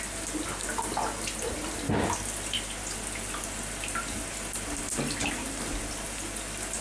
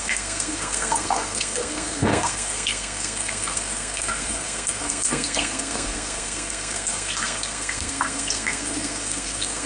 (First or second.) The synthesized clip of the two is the second